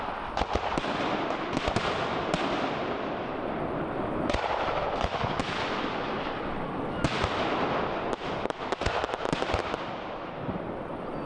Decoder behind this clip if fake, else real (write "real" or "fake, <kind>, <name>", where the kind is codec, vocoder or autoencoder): real